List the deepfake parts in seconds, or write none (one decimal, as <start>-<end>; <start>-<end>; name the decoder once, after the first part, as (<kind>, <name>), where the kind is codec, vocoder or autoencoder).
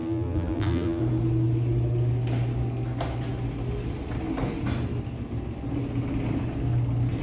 0.0-1.0 (vocoder, BigVGAN v2)